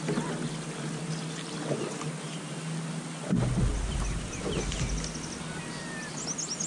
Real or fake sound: real